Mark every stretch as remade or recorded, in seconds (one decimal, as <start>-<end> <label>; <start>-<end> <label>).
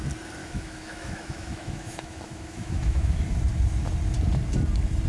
0.0-0.4 recorded; 0.4-3.2 remade; 3.2-5.1 recorded